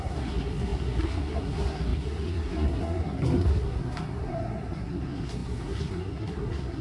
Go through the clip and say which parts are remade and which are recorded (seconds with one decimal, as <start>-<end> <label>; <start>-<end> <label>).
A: 0.0-6.8 remade